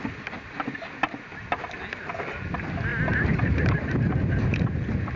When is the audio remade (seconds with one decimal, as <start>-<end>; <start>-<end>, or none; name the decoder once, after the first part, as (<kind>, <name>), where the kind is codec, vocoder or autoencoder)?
none